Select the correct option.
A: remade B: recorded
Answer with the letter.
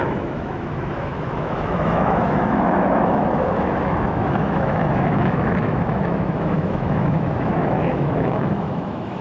A